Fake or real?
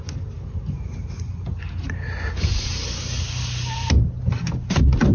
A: real